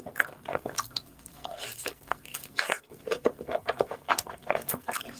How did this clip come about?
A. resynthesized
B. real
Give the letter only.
A